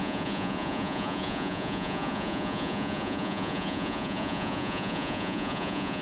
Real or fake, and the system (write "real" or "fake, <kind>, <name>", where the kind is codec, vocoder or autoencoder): fake, vocoder, Vocos